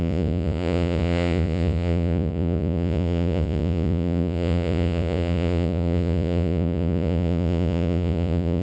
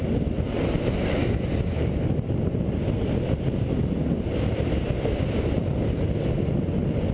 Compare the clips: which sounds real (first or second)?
second